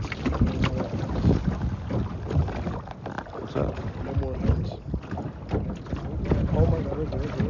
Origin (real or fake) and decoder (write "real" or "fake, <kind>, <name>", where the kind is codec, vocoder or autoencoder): real